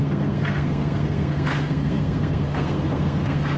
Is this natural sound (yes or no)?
no